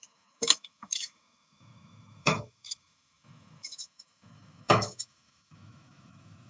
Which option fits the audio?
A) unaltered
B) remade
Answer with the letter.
B